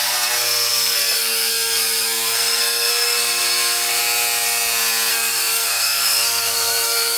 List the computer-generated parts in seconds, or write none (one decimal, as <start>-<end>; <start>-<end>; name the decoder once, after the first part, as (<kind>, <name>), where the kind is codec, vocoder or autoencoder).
0.0-4.0 (codec, SNAC); 5.1-7.2